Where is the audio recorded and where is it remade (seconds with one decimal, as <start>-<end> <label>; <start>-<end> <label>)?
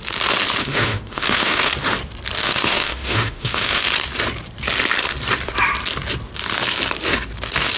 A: 0.0-0.6 recorded; 0.6-1.7 remade; 1.7-2.4 recorded; 2.4-3.9 remade; 3.9-7.8 recorded